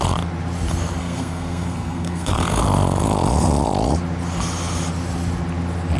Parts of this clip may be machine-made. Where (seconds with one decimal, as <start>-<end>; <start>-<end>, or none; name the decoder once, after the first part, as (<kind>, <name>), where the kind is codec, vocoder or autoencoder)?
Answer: 1.0-2.6 (codec, SNAC)